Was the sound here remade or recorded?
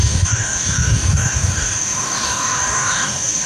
remade